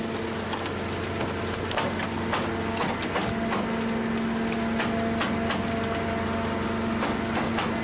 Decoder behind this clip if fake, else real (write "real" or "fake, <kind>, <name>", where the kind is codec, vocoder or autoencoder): real